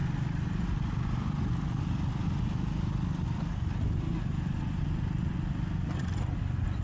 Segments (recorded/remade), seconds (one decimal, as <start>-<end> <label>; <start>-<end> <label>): 0.0-6.8 recorded